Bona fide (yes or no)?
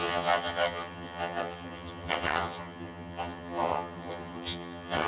no